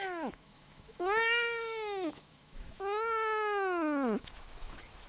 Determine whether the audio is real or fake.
fake